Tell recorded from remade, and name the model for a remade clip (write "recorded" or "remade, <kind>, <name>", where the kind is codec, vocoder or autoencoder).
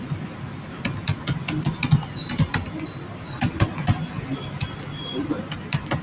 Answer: recorded